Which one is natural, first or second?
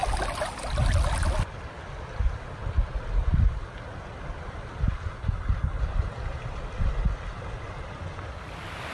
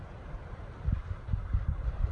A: first